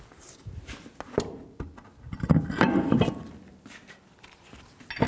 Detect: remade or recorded recorded